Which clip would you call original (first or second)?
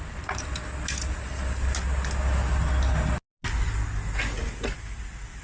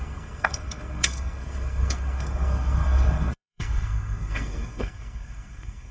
first